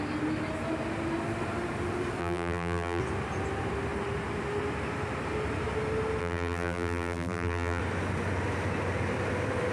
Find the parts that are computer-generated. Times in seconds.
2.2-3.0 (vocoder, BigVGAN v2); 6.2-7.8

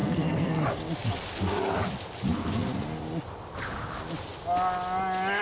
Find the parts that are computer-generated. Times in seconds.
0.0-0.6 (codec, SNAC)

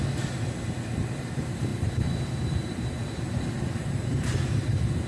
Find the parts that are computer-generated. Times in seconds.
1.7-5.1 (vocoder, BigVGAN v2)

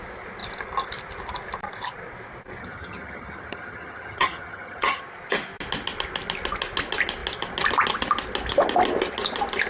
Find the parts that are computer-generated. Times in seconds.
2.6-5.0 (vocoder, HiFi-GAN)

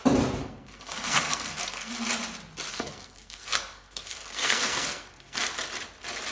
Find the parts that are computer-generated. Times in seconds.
0.4-1.9 (codec, SNAC); 2.7-5.5

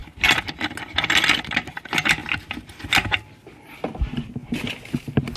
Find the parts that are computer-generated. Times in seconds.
none

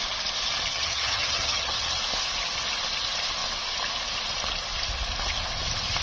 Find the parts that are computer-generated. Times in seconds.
0.7-2.0 (vocoder, HiFi-GAN)